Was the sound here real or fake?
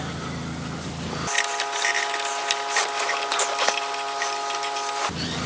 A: real